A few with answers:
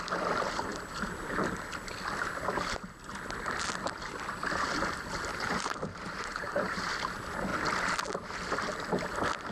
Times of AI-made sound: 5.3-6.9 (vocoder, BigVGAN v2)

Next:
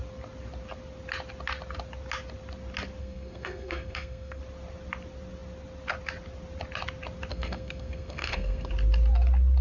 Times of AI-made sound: 3.0-4.4 (codec, SNAC); 7.3-8.7